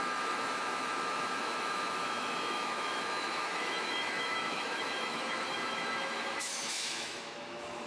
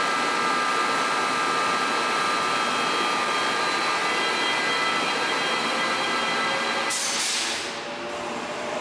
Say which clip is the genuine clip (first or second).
second